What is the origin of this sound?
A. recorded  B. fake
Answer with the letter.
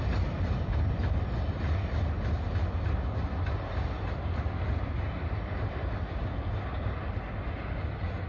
A